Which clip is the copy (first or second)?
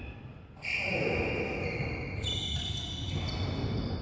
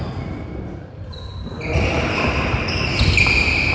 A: second